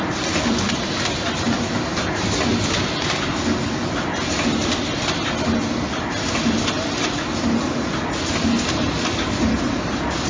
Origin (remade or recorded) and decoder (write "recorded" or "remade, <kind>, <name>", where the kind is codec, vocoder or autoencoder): recorded